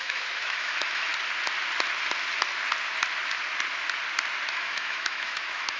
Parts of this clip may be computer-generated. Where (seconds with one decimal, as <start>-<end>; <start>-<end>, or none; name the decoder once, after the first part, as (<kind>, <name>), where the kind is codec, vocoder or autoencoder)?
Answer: 0.0-1.1 (autoencoder, DAC-VAE); 4.5-5.8